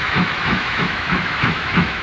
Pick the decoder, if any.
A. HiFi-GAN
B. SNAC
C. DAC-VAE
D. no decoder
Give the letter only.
C